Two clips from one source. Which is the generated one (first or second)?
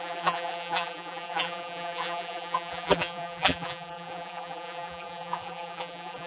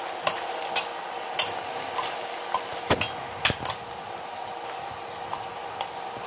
first